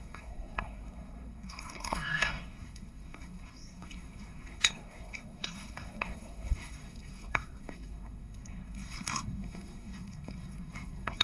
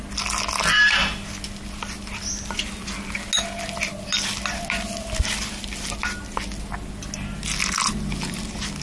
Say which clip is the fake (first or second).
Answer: first